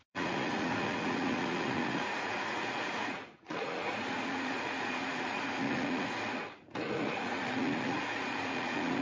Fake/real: fake